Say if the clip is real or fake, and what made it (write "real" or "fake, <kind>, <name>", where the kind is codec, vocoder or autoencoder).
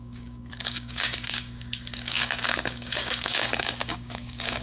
fake, codec, DAC